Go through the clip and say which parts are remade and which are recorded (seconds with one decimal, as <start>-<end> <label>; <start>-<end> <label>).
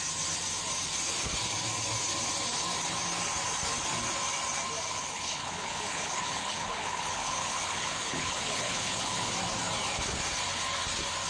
0.0-4.9 recorded; 4.9-9.3 remade; 9.3-11.3 recorded